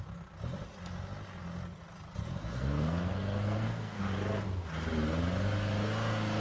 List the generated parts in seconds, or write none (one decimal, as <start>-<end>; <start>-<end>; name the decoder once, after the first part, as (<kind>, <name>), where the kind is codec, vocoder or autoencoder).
2.5-4.0 (codec, SNAC)